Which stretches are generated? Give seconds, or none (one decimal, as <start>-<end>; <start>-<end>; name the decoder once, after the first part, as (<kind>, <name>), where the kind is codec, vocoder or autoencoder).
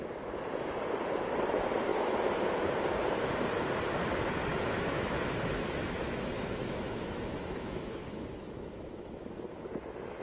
1.9-2.8 (autoencoder, DAC-VAE); 4.5-9.6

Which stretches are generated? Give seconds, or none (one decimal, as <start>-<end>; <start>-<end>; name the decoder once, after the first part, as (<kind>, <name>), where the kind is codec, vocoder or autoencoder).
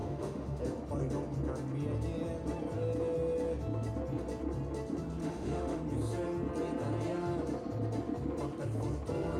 0.0-0.6 (autoencoder, DAC-VAE); 5.2-5.8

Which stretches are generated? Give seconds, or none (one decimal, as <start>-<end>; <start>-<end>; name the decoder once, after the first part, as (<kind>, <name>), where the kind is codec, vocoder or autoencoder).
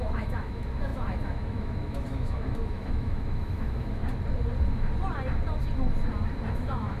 0.0-4.0 (autoencoder, DAC-VAE); 6.5-7.0